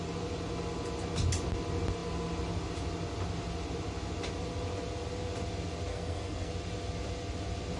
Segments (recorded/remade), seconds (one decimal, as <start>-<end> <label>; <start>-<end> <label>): 0.0-5.9 recorded; 5.9-6.5 remade; 6.5-7.8 recorded